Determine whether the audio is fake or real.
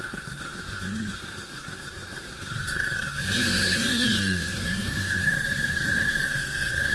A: fake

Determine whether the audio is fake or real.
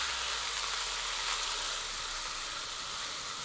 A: real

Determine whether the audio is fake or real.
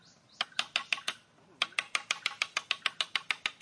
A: real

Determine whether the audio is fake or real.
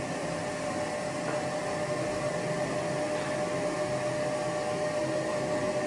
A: real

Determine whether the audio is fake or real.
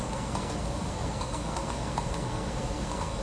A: fake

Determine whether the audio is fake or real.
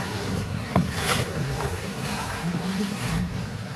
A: fake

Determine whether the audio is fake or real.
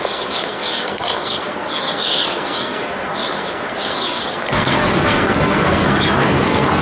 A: fake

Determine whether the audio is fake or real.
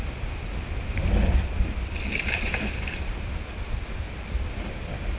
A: real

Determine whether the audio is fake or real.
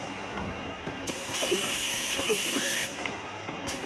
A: fake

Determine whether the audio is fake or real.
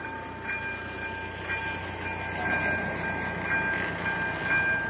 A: real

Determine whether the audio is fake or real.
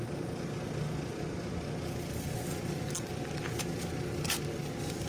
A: real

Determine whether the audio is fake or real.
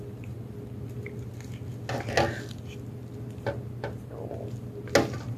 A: real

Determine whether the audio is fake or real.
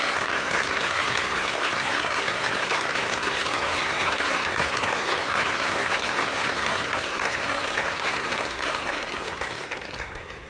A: fake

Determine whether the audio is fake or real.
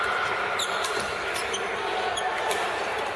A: real